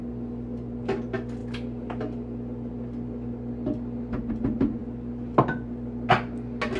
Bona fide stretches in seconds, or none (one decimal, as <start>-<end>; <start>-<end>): 0.0-6.8